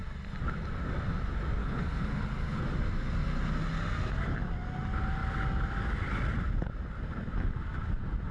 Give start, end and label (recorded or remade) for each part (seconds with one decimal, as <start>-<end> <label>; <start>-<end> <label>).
0.0-1.6 recorded; 1.6-2.6 remade; 2.6-8.3 recorded